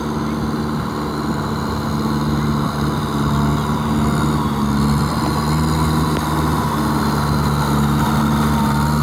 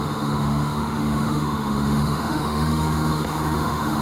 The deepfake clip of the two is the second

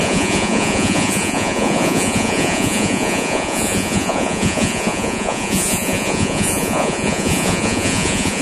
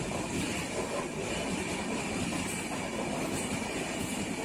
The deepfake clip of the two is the first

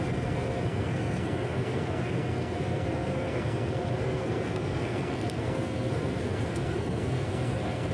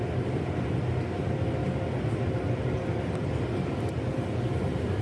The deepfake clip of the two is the first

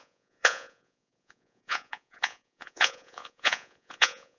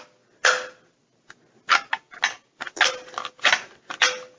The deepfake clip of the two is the first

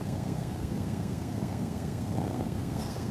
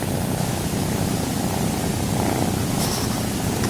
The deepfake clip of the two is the first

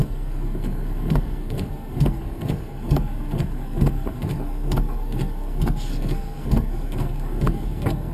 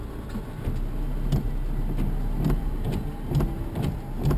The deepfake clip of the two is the first